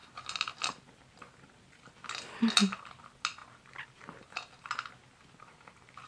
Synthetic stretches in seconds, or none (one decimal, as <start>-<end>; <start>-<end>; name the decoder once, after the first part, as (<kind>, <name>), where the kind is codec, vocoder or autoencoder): none